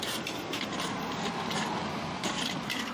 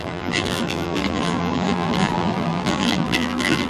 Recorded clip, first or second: first